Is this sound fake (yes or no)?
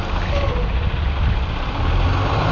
no